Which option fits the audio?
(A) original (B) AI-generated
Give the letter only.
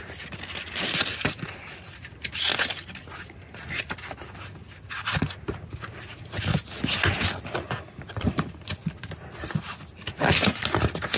A